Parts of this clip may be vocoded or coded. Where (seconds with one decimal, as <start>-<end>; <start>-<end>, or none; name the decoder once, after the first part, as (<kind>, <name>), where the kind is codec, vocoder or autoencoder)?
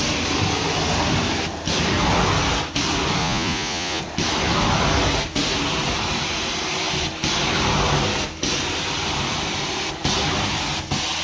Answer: 3.2-4.0 (vocoder, Vocos)